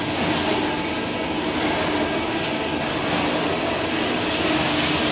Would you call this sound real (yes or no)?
yes